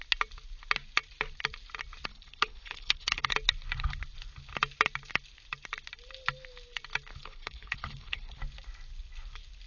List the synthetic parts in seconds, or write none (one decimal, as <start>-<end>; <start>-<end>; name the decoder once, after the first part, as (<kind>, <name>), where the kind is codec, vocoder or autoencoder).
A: 2.1-3.3 (codec, HILCodec); 7.2-8.4